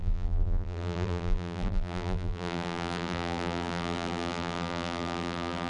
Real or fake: fake